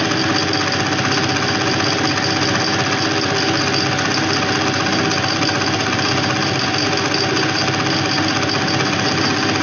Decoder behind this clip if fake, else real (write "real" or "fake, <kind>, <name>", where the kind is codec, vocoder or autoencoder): real